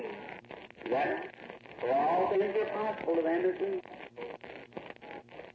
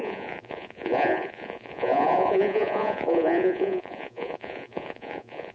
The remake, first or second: second